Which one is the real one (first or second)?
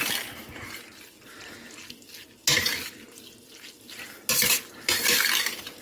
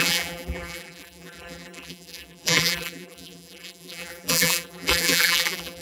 first